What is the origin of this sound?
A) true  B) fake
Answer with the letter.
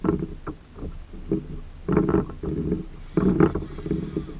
A